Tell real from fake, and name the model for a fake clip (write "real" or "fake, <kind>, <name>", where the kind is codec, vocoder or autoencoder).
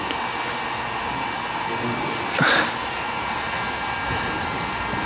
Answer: real